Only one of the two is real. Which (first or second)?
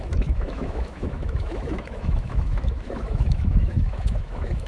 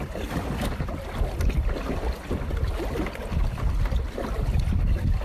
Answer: second